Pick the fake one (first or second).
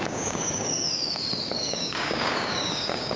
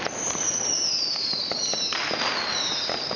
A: first